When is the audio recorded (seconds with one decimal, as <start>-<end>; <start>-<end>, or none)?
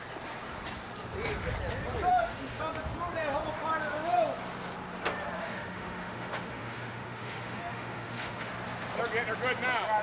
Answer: 0.0-2.1; 2.6-5.4; 8.5-10.0